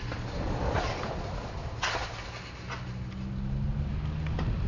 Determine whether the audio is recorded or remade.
recorded